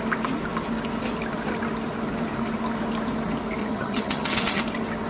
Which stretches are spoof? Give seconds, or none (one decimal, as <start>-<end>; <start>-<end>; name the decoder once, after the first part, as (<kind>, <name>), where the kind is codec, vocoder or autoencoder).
3.6-4.6 (vocoder, HiFi-GAN)